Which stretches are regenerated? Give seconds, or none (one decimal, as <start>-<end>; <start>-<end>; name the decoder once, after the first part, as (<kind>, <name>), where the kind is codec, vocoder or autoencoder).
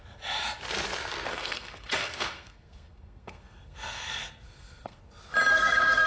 1.3-5.0 (codec, SNAC); 5.5-6.1